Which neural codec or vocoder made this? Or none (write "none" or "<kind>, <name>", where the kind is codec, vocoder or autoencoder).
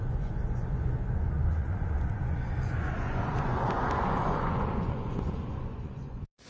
vocoder, Vocos